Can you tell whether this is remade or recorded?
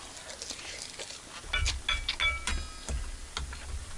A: recorded